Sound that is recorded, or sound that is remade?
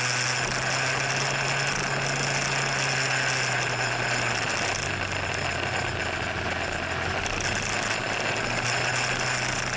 recorded